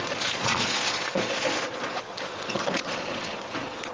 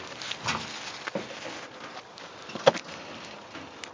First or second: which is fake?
first